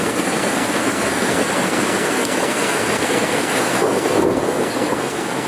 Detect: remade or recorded remade